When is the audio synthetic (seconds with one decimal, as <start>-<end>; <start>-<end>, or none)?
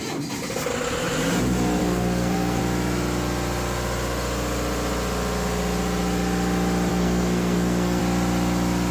1.8-2.6; 6.9-8.0